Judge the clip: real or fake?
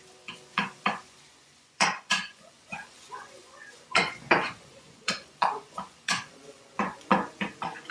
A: fake